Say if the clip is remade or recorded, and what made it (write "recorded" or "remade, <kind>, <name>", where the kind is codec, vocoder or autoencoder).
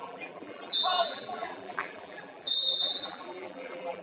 remade, vocoder, BigVGAN v2